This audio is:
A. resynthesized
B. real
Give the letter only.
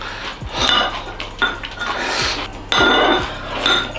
B